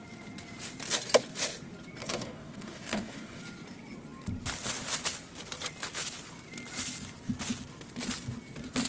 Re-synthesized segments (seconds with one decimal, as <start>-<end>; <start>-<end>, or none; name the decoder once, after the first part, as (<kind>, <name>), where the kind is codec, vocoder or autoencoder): 2.0-3.4 (codec, DAC)